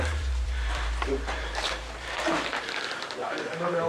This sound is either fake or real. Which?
fake